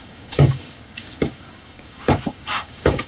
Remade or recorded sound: remade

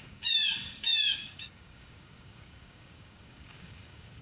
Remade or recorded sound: remade